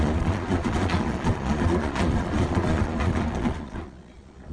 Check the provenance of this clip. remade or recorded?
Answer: remade